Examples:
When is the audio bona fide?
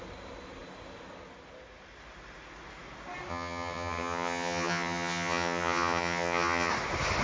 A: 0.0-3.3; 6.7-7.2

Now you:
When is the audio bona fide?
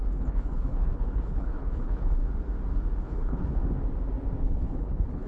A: 2.2-3.0; 3.6-4.4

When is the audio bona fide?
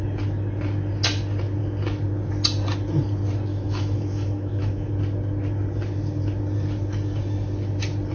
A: 0.0-3.5; 4.9-8.1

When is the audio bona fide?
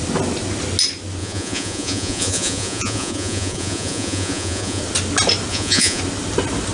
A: 0.0-1.2; 4.8-5.5; 6.0-6.7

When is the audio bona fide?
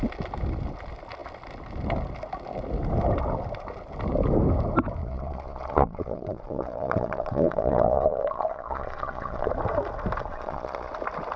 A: 0.0-5.0; 9.5-10.3; 10.9-11.4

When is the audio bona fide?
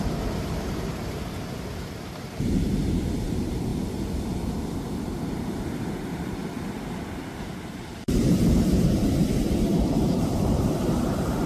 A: 3.7-5.3; 6.4-8.0; 9.0-9.7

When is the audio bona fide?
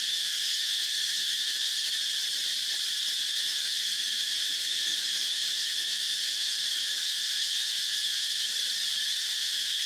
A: 1.9-3.4; 8.5-9.2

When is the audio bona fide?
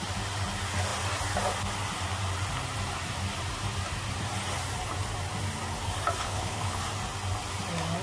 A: 0.0-6.2; 6.8-8.0